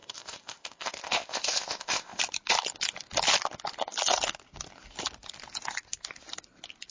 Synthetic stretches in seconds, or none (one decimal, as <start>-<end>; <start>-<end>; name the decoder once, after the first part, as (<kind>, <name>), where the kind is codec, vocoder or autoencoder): 0.0-2.2 (codec, ZipCodec)